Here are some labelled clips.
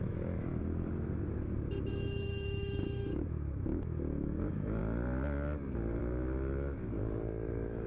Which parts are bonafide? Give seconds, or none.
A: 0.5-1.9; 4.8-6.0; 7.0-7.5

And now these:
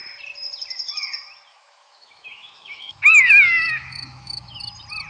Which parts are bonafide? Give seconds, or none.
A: 0.0-1.5; 4.6-5.1

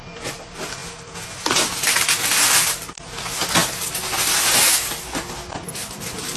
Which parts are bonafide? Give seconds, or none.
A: 0.0-6.4

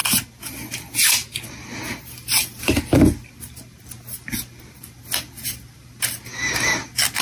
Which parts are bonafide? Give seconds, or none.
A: 0.0-7.2

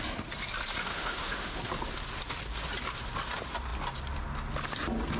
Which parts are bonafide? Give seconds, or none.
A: 0.0-0.9; 1.6-5.2

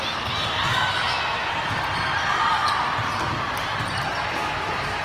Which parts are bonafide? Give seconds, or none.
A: 0.0-0.7; 1.5-4.4